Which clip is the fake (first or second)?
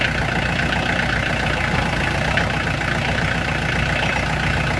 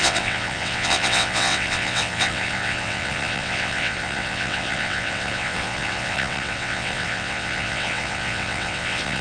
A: second